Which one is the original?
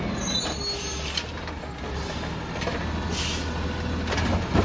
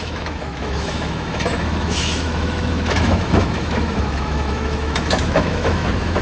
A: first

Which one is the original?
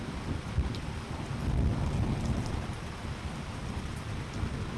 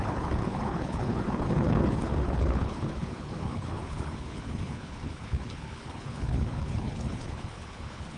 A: first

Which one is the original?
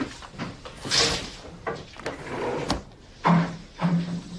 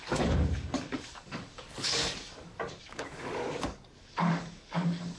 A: first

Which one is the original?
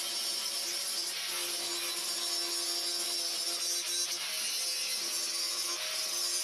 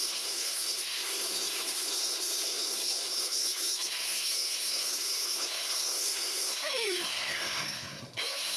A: first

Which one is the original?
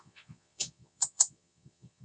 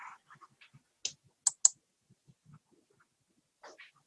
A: second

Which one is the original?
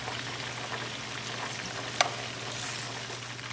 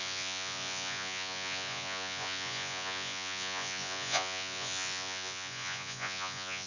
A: first